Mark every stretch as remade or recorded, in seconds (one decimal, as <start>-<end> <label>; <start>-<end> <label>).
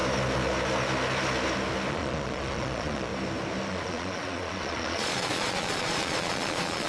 0.0-1.9 recorded; 1.9-3.1 remade; 3.1-3.7 recorded; 3.7-6.9 remade